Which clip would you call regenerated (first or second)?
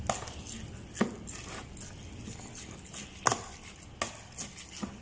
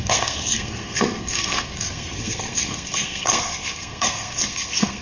second